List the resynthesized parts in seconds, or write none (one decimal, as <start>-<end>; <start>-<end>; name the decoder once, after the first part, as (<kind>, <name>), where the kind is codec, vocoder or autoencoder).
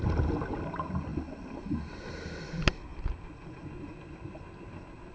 none